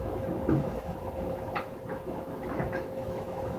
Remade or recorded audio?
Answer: remade